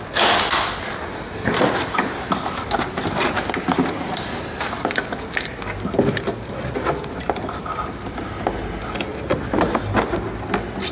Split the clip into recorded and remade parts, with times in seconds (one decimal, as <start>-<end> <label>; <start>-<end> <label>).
0.0-9.1 recorded; 9.1-9.8 remade; 9.8-10.9 recorded